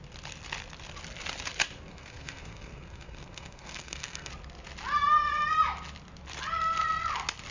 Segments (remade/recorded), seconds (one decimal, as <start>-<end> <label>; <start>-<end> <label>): 0.0-1.9 recorded; 1.9-4.3 remade; 4.3-7.5 recorded